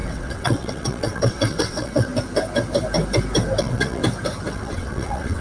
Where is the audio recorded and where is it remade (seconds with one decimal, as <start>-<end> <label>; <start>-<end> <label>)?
0.0-2.1 remade; 2.1-3.6 recorded; 3.6-4.0 remade; 4.0-4.5 recorded; 4.5-5.4 remade